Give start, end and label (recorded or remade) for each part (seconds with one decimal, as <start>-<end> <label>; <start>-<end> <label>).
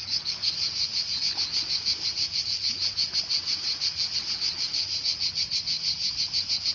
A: 0.0-0.5 remade; 0.5-6.7 recorded